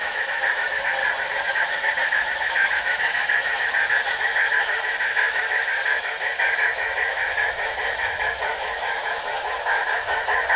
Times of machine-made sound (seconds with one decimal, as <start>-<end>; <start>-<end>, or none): 0.0-1.0; 1.5-10.6